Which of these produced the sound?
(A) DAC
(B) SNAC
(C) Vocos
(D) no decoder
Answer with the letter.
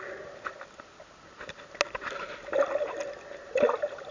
D